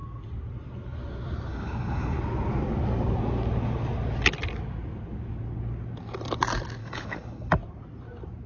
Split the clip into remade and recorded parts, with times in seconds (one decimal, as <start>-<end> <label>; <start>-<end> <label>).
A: 0.0-1.5 recorded; 1.5-2.2 remade; 2.2-6.8 recorded; 6.8-7.5 remade; 7.5-8.5 recorded